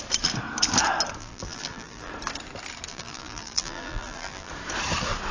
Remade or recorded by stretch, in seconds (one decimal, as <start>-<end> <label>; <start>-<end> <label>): 0.0-1.2 recorded; 1.2-2.1 remade; 2.1-2.9 recorded; 2.9-4.5 remade; 4.5-5.3 recorded